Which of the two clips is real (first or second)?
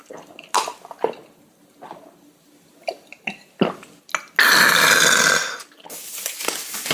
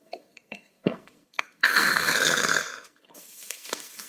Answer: first